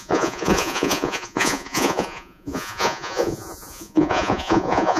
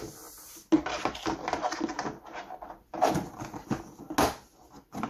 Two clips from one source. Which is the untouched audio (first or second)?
second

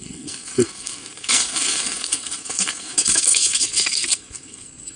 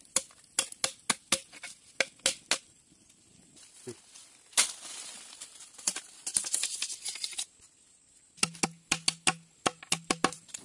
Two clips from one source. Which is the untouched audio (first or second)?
second